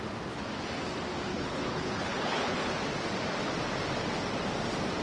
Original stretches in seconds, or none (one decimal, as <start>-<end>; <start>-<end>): 0.0-1.3; 2.7-5.0